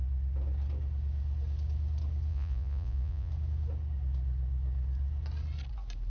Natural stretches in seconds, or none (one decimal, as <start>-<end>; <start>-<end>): 0.0-2.3; 3.3-6.1